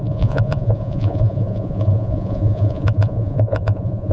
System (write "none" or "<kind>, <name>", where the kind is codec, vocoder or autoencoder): vocoder, Vocos